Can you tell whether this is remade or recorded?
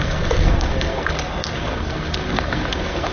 remade